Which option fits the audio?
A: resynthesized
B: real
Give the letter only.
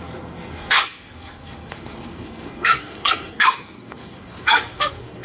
A